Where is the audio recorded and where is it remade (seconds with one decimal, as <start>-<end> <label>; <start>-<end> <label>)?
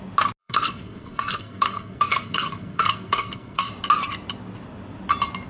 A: 0.0-0.4 recorded; 0.4-3.7 remade; 3.7-5.5 recorded